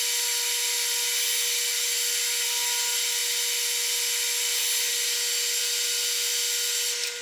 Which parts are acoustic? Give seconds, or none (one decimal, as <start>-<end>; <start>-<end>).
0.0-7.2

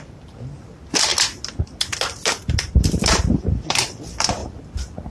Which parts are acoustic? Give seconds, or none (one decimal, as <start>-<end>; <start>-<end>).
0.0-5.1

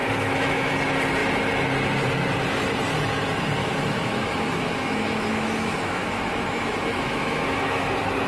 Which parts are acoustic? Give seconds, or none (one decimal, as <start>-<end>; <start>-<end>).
0.7-3.6; 7.9-8.3

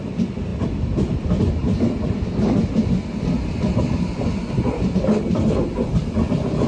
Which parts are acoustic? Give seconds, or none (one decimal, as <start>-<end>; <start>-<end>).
0.0-6.7

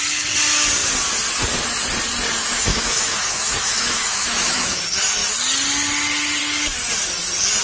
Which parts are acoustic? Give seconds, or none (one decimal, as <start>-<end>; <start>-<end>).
0.0-2.4; 4.8-7.6

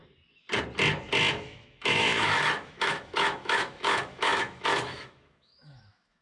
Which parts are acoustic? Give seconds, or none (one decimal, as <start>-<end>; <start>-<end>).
0.0-1.3